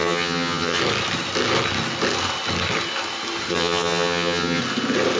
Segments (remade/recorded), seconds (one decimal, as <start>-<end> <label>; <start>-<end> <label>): 0.0-0.8 remade; 0.8-3.5 recorded; 3.5-4.6 remade; 4.6-5.2 recorded